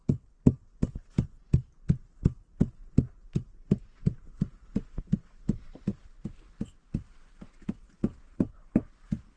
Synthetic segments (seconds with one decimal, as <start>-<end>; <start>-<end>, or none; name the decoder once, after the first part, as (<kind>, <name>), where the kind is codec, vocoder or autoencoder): 0.0-2.6 (vocoder, BigVGAN v2); 4.0-9.4